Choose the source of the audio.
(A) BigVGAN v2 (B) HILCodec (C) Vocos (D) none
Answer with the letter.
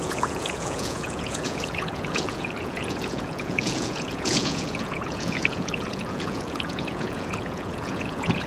C